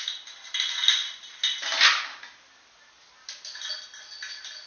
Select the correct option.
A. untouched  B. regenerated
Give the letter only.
A